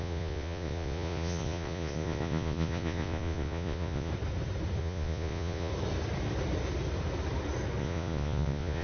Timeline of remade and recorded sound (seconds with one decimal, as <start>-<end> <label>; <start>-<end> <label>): 0.0-4.1 remade; 4.1-4.8 recorded; 4.8-5.7 remade; 5.7-7.8 recorded; 7.8-8.8 remade